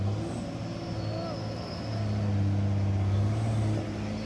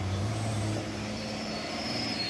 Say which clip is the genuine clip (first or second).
first